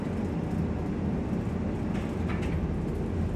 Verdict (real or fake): real